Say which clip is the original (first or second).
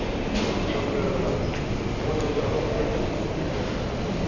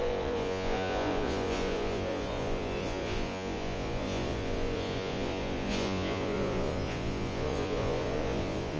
first